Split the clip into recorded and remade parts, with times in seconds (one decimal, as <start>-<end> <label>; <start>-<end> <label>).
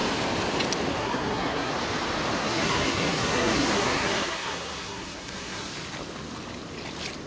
0.0-1.0 recorded; 1.0-1.7 remade; 1.7-2.4 recorded; 2.4-5.7 remade; 5.7-7.3 recorded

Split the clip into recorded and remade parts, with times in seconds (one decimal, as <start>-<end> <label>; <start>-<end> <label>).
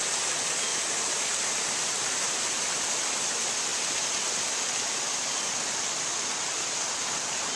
0.0-0.7 recorded; 0.7-2.9 remade; 2.9-7.6 recorded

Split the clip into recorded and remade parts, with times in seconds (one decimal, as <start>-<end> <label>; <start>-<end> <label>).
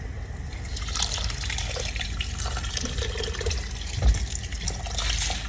0.0-0.7 recorded; 0.7-3.0 remade; 3.0-5.5 recorded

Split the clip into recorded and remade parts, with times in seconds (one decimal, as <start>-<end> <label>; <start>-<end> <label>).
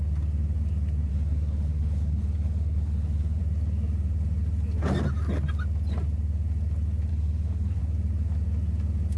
0.0-1.1 recorded; 1.1-3.4 remade; 3.4-7.1 recorded; 7.1-7.8 remade; 7.8-9.2 recorded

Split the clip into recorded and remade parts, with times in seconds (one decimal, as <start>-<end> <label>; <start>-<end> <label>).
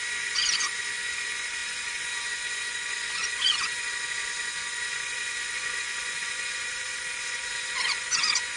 0.0-8.6 remade